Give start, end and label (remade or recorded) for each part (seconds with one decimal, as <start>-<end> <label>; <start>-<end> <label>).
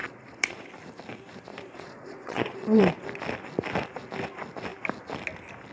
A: 0.0-0.7 remade; 0.7-1.5 recorded; 1.5-2.8 remade; 2.8-5.7 recorded